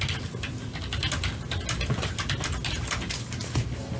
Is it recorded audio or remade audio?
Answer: recorded